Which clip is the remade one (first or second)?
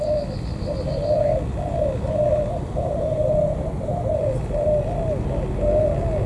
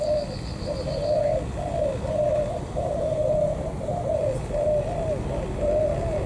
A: second